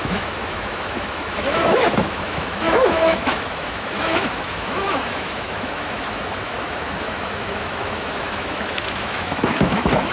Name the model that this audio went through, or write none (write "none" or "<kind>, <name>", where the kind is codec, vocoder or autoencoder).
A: autoencoder, DAC-VAE